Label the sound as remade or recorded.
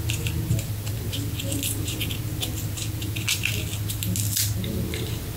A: recorded